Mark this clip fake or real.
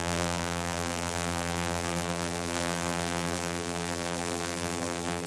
fake